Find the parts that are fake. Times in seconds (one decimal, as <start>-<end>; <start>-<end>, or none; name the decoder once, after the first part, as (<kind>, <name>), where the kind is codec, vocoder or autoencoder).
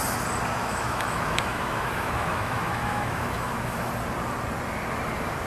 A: 0.6-3.9 (autoencoder, DAC-VAE)